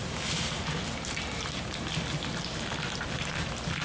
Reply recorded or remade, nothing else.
recorded